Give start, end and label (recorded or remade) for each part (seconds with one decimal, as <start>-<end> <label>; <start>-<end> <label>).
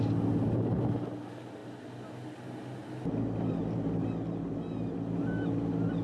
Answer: 0.0-6.0 recorded